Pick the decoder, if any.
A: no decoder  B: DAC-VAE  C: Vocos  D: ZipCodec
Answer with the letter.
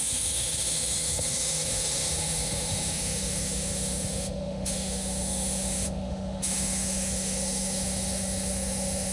B